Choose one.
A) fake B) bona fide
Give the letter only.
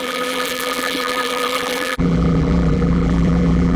A